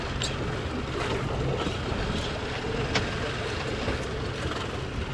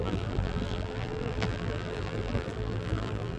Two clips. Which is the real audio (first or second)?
first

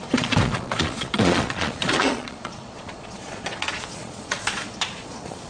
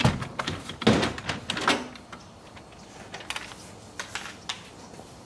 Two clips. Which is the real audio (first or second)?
second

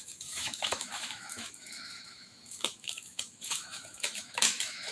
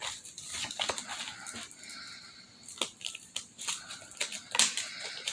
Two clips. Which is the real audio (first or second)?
second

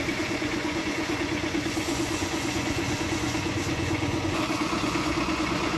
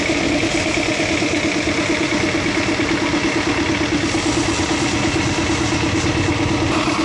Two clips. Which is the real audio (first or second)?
second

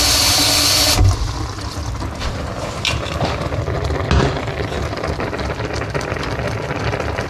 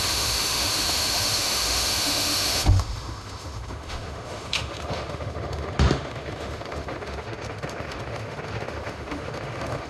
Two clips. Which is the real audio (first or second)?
first